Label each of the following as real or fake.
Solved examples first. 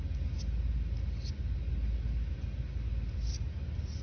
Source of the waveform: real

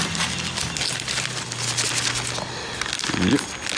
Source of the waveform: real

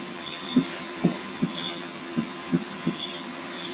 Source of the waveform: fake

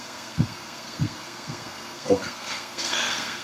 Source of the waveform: fake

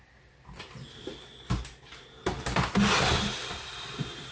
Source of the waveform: real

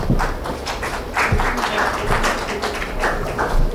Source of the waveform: real